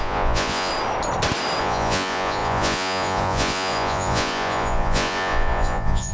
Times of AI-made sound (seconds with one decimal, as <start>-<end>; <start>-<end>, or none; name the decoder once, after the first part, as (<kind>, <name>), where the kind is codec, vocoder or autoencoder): 0.0-0.7 (vocoder, Vocos); 1.6-6.1